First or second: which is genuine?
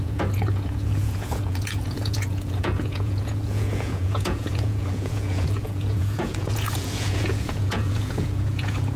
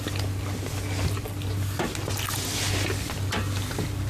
second